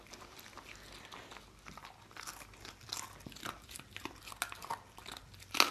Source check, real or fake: real